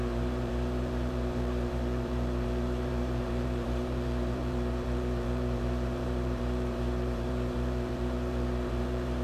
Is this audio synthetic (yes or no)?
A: yes